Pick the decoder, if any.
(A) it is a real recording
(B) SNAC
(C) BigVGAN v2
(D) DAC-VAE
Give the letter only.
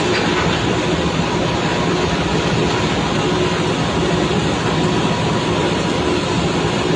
A